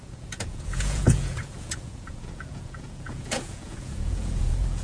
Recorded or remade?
remade